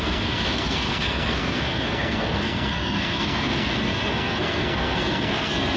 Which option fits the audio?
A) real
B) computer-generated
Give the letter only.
B